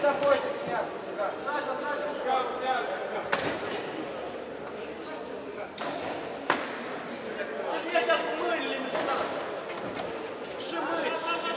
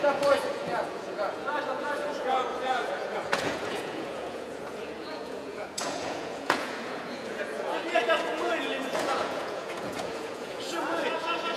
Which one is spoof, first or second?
second